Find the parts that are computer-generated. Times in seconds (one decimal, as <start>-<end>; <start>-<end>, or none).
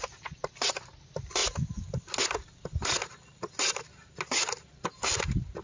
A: 0.0-1.4; 4.7-5.6